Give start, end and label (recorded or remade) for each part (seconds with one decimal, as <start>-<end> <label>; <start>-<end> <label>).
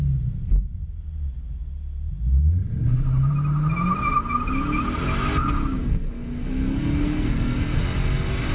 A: 0.0-5.8 recorded; 5.8-7.8 remade; 7.8-8.5 recorded